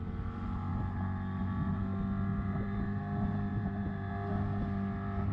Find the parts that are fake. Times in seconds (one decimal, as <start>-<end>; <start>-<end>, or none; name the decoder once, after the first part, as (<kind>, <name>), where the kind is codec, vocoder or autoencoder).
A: 2.3-3.0 (vocoder, BigVGAN v2); 3.5-4.1